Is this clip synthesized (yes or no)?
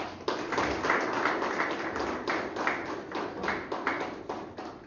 no